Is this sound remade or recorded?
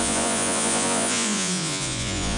remade